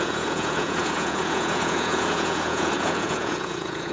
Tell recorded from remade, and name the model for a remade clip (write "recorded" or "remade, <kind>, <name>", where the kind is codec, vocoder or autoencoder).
remade, vocoder, Vocos